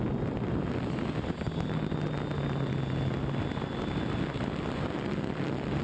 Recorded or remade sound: recorded